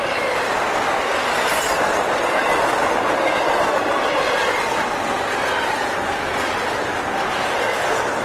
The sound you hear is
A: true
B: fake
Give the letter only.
A